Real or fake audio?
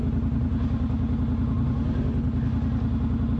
real